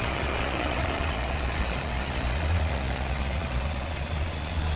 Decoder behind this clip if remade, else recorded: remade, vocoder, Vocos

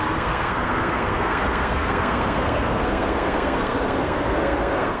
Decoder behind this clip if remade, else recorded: remade, codec, SNAC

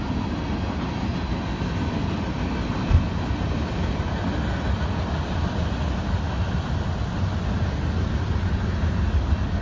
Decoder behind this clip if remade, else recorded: recorded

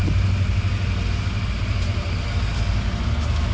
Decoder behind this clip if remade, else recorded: recorded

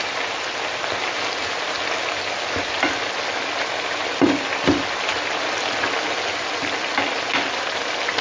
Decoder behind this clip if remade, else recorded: recorded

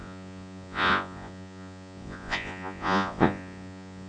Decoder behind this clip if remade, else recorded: remade, vocoder, Vocos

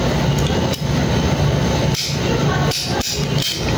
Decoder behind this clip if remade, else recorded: recorded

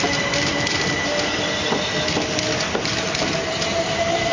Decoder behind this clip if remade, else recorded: recorded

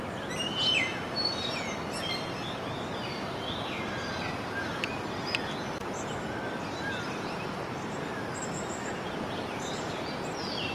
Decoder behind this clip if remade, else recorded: recorded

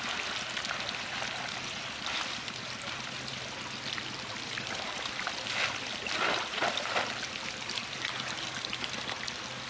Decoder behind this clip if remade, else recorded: recorded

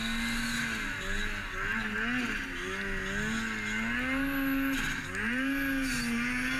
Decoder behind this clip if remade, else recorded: recorded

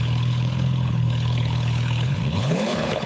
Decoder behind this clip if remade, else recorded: remade, codec, HILCodec